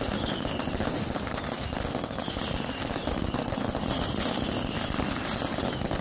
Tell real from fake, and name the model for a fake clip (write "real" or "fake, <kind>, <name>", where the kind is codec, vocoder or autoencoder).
real